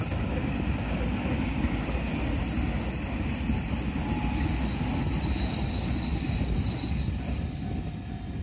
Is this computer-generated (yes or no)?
no